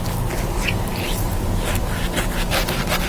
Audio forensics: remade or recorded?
recorded